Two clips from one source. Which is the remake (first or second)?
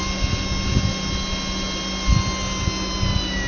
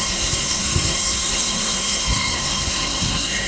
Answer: second